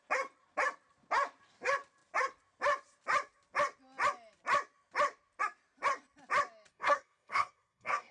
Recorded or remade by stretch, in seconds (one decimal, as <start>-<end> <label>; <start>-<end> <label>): 0.0-6.7 recorded; 6.7-8.1 remade